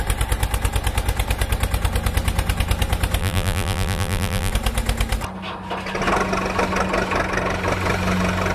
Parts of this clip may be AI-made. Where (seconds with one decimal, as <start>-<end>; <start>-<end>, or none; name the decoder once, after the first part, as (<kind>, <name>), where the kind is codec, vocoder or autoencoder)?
3.2-4.5 (vocoder, BigVGAN v2)